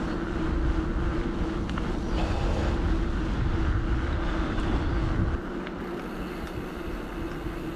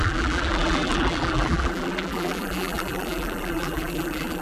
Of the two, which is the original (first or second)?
first